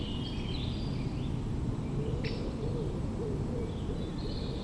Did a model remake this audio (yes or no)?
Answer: no